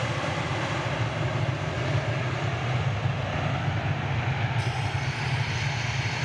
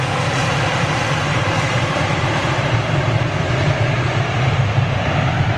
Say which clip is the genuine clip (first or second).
first